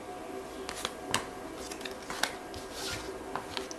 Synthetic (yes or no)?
no